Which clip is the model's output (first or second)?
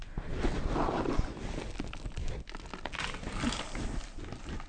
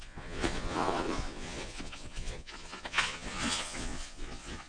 second